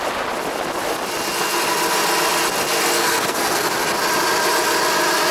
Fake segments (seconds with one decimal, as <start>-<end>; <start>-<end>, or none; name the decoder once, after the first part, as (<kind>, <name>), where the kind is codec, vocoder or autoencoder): 3.0-3.6 (codec, SNAC)